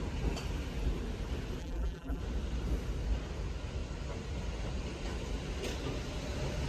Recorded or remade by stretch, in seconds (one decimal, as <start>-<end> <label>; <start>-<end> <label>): 0.0-1.6 recorded; 1.6-2.2 remade; 2.2-6.7 recorded